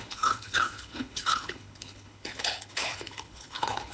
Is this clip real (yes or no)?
no